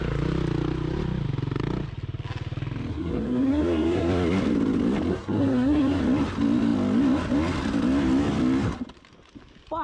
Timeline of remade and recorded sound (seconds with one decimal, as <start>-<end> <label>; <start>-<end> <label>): 0.0-2.9 recorded; 2.9-4.1 remade; 4.1-5.1 recorded; 5.1-6.0 remade; 6.0-9.8 recorded